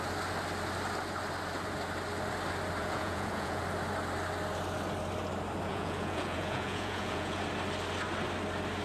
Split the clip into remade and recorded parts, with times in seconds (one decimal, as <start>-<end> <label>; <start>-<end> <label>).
0.0-2.8 recorded; 2.8-3.6 remade; 3.6-5.7 recorded; 5.7-7.4 remade; 7.4-8.8 recorded